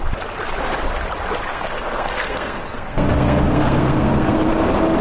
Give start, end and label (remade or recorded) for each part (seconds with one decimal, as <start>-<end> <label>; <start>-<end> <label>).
0.0-1.5 recorded; 1.5-4.5 remade; 4.5-5.0 recorded

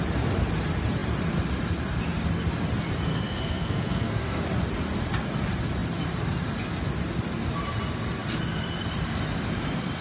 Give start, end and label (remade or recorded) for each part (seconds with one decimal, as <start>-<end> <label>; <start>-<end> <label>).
0.0-3.1 recorded; 3.1-4.4 remade; 4.4-10.0 recorded

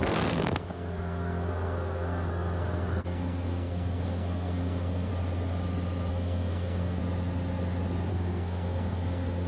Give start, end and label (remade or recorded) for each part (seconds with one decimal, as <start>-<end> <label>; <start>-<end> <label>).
0.0-5.1 remade; 5.1-6.1 recorded; 6.1-7.0 remade; 7.0-8.1 recorded; 8.1-9.5 remade